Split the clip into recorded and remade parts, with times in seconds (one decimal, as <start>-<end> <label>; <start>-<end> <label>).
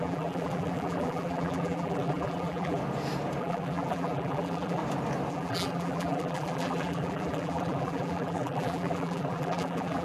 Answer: 0.0-2.8 remade; 2.8-3.4 recorded; 3.4-4.8 remade; 4.8-5.3 recorded; 5.3-10.0 remade